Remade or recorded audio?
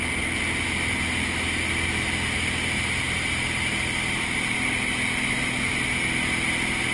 recorded